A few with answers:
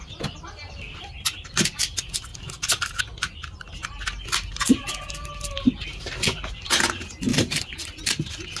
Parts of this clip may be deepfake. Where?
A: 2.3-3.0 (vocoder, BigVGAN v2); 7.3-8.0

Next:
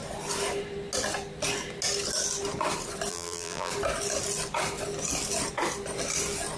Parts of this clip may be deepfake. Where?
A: 3.1-3.7 (vocoder, BigVGAN v2)

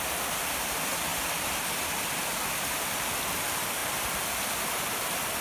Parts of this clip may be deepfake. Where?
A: 1.1-1.9 (vocoder, BigVGAN v2)

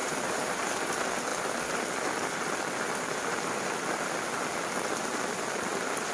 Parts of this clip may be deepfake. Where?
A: 0.0-0.9 (vocoder, BigVGAN v2)

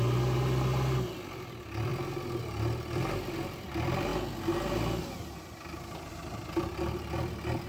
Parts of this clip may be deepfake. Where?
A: 0.0-1.9 (vocoder, BigVGAN v2); 2.4-4.1; 6.1-7.7

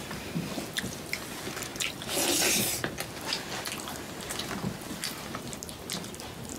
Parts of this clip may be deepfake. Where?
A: none

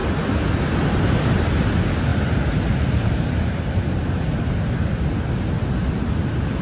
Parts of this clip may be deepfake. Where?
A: 2.1-4.7 (vocoder, BigVGAN v2)